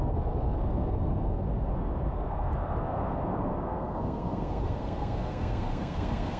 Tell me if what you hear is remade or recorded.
remade